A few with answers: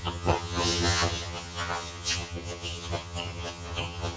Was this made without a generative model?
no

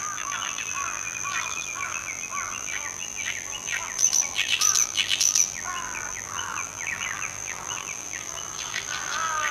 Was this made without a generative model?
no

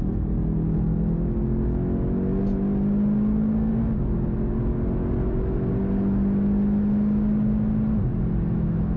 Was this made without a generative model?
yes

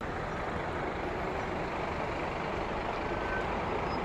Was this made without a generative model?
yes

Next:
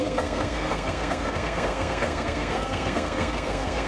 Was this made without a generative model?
no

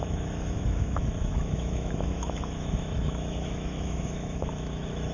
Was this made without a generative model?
no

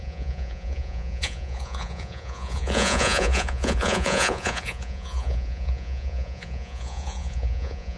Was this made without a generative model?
no